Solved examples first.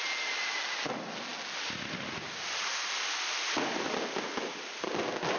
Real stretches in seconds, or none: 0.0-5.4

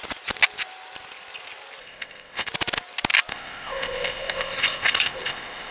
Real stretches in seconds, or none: 0.0-1.8; 2.5-3.3

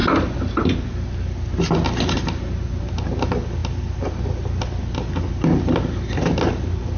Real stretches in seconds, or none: 0.0-7.0